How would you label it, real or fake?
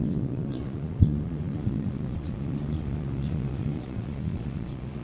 fake